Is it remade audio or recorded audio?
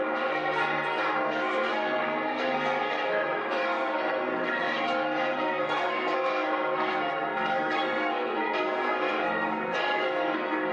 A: remade